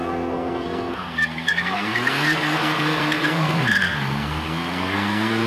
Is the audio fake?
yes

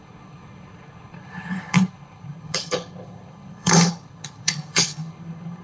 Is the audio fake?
yes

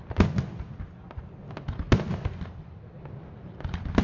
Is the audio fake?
no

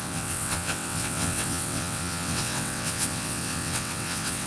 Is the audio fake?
yes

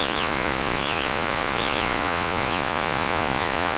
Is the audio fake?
yes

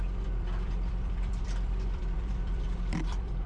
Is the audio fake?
yes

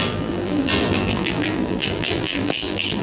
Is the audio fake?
yes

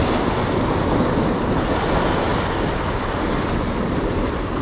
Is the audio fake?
no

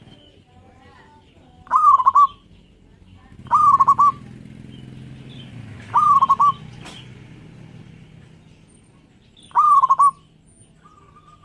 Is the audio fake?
no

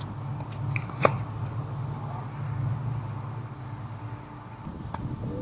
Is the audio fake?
no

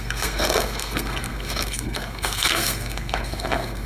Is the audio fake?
yes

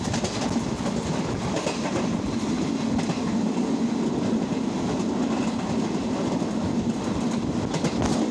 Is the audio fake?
no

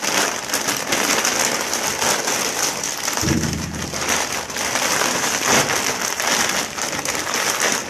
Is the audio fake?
no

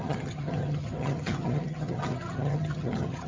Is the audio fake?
yes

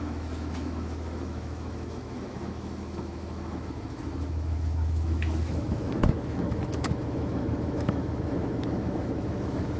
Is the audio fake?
yes